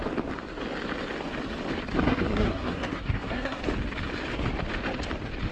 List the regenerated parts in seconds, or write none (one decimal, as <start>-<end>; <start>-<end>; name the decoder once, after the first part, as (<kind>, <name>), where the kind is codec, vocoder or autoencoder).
1.9-3.6 (codec, SNAC)